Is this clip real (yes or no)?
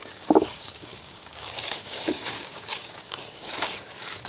no